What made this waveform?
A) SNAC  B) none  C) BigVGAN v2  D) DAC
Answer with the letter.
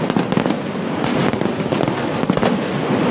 B